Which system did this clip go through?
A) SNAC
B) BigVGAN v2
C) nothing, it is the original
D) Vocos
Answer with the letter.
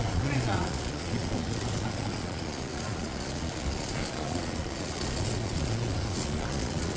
D